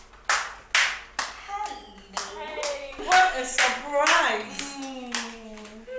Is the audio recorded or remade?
recorded